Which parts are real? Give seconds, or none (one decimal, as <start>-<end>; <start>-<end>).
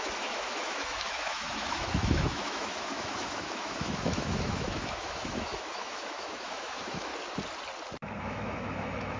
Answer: 7.1-8.2